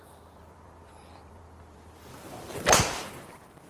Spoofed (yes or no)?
yes